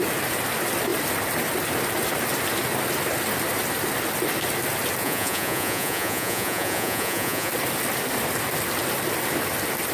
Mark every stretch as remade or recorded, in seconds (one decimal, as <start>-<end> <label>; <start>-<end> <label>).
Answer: 0.0-5.0 recorded; 5.0-7.5 remade; 7.5-9.9 recorded